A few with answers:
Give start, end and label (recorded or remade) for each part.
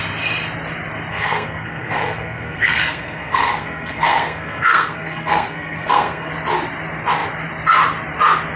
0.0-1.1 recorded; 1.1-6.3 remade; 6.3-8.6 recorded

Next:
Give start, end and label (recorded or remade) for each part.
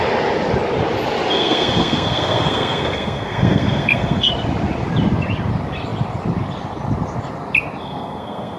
0.0-1.3 recorded; 1.3-4.3 remade; 4.3-7.8 recorded; 7.8-8.6 remade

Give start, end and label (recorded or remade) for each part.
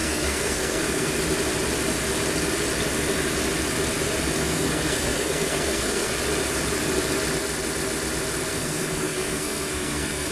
0.0-1.1 remade; 1.1-4.4 recorded; 4.4-6.1 remade; 6.1-8.5 recorded; 8.5-10.3 remade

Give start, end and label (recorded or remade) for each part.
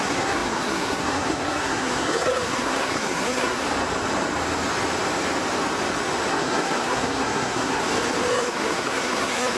0.0-3.6 remade; 3.6-6.3 recorded; 6.3-7.8 remade; 7.8-8.3 recorded; 8.3-9.6 remade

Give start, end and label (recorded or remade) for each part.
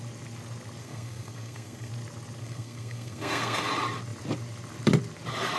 0.0-0.8 recorded; 0.8-1.9 remade; 1.9-2.4 recorded; 2.4-3.6 remade; 3.6-5.6 recorded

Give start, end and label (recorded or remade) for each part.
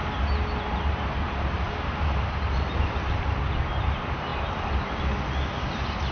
0.0-6.1 recorded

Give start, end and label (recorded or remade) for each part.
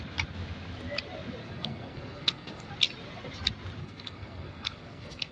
0.0-1.4 recorded; 1.4-2.7 remade; 2.7-3.8 recorded; 3.8-5.3 remade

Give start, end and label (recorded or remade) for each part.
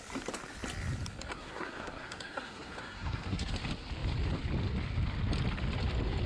0.0-1.3 recorded; 1.3-3.5 remade; 3.5-6.3 recorded